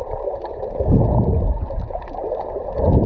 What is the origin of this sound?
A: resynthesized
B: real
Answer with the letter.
B